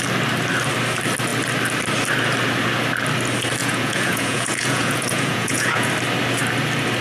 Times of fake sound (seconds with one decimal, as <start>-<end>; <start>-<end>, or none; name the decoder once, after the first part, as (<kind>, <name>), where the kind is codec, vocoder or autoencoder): 3.6-5.9 (vocoder, Vocos)